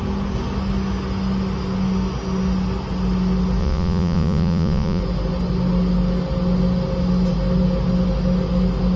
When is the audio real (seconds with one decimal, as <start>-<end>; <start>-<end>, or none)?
0.0-3.6; 5.0-9.0